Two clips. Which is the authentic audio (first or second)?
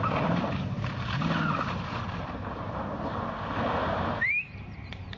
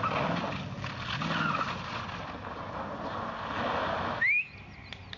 second